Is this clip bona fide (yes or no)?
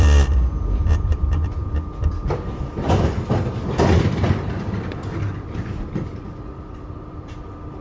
no